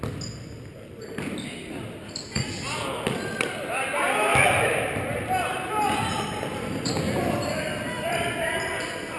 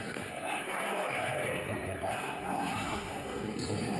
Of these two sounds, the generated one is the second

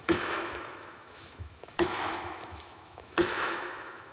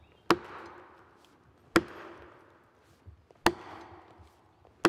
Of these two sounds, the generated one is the first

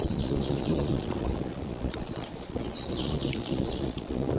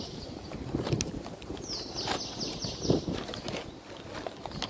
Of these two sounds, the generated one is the first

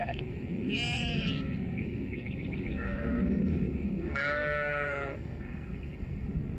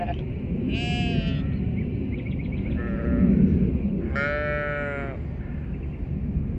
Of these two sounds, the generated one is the first